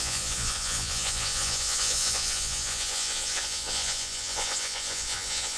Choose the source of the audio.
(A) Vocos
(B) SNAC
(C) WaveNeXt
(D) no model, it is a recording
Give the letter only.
A